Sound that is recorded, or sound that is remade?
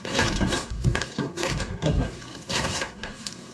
remade